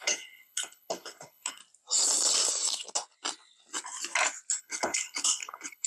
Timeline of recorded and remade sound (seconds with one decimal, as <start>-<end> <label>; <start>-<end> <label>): 0.0-1.6 remade; 1.6-4.6 recorded; 4.6-5.9 remade